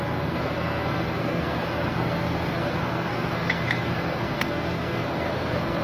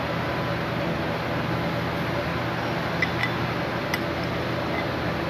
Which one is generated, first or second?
first